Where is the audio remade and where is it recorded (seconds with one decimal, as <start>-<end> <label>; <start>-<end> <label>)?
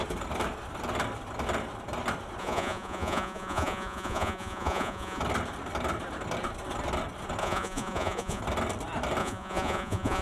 0.0-2.4 recorded; 2.4-5.2 remade; 5.2-7.4 recorded; 7.4-8.4 remade; 8.4-9.2 recorded; 9.2-10.2 remade